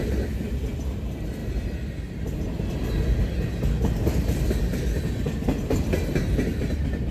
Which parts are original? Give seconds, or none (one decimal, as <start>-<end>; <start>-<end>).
0.0-7.1